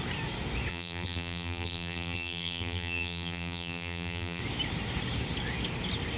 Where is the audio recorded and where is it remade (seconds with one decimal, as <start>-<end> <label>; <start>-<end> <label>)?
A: 0.0-0.7 recorded; 0.7-4.4 remade; 4.4-6.2 recorded